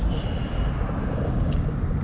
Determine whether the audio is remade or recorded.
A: recorded